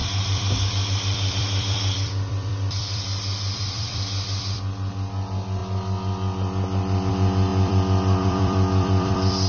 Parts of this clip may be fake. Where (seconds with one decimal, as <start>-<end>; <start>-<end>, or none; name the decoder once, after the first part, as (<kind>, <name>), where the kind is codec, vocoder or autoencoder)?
0.0-4.6 (vocoder, BigVGAN v2); 7.5-9.5